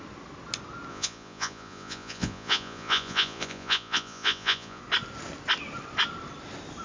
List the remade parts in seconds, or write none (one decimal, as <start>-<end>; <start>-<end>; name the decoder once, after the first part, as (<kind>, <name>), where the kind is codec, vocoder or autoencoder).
0.9-4.8 (vocoder, Vocos)